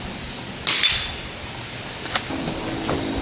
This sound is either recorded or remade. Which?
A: recorded